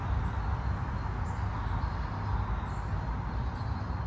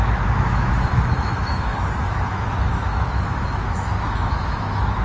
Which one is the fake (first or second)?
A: second